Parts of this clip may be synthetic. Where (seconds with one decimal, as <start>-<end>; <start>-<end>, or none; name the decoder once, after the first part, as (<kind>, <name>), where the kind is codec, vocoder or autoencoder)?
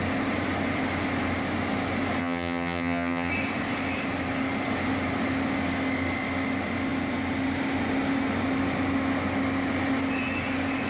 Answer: 2.2-3.3 (vocoder, HiFi-GAN)